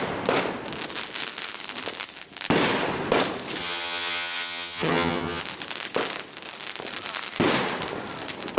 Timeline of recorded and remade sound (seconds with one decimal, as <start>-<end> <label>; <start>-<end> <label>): 0.0-3.6 recorded; 3.6-5.4 remade; 5.4-8.6 recorded

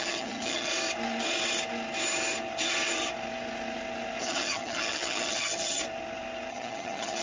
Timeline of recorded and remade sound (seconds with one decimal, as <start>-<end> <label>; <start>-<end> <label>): 0.0-0.7 remade; 0.7-4.2 recorded; 4.2-5.8 remade; 5.8-6.5 recorded; 6.5-7.2 remade

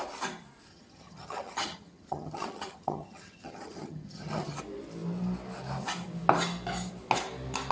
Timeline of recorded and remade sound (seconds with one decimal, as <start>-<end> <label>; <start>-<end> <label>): 0.0-0.7 recorded; 0.7-4.6 remade; 4.6-7.7 recorded

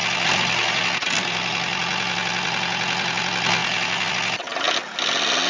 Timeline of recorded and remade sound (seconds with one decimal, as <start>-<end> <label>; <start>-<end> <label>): 0.0-5.5 recorded

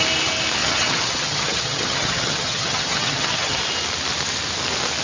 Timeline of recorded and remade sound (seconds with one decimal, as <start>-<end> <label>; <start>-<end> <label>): 0.0-0.6 recorded; 0.6-3.6 remade; 3.6-5.0 recorded